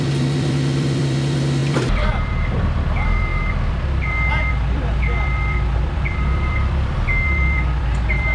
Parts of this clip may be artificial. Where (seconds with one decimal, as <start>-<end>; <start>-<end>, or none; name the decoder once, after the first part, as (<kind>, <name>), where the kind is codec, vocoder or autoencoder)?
0.0-8.3 (vocoder, BigVGAN v2)